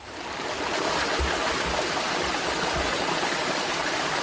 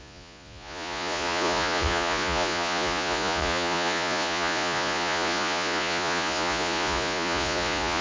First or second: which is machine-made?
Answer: second